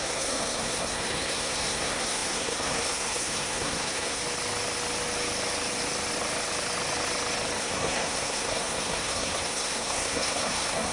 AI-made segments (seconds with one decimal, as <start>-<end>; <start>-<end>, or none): 0.0-4.2; 7.6-10.9